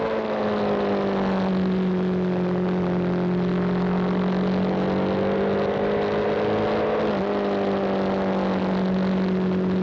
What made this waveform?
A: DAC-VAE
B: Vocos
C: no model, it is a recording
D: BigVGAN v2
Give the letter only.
C